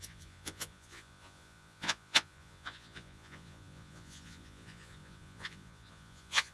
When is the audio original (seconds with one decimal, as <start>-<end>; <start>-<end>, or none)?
none